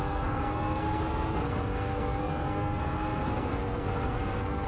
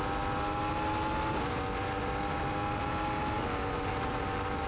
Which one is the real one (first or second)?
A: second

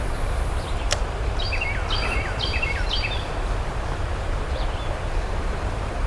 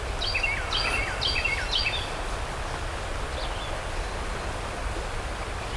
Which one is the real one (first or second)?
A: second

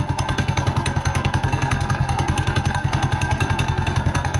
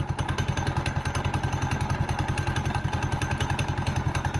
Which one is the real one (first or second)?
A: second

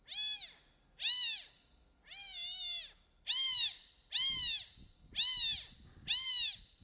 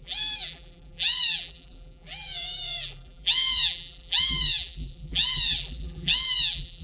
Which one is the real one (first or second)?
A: first